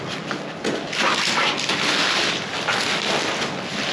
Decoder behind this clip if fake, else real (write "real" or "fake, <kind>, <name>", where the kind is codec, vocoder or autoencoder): real